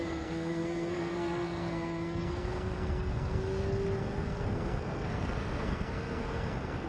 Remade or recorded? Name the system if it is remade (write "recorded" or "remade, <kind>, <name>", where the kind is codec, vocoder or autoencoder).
remade, codec, SNAC